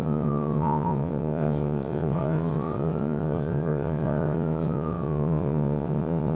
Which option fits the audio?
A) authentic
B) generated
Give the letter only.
B